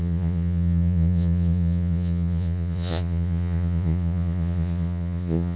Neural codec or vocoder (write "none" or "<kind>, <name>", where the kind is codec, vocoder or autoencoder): vocoder, Vocos